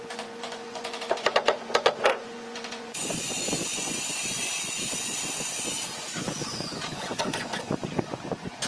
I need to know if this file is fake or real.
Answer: fake